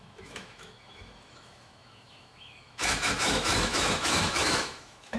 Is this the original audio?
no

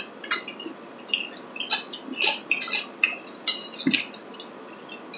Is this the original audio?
yes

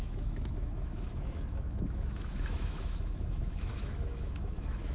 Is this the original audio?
no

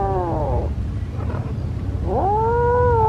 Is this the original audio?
yes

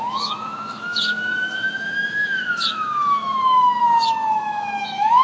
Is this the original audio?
no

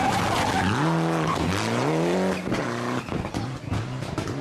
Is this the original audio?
yes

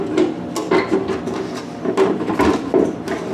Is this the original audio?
yes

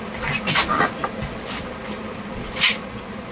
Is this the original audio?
yes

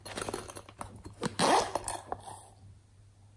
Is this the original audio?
yes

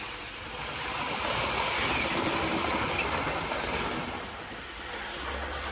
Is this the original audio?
yes